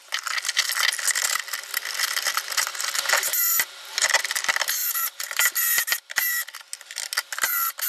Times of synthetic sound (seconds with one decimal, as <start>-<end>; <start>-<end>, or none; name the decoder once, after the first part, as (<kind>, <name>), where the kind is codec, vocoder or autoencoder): 4.8-5.5 (vocoder, BigVGAN v2)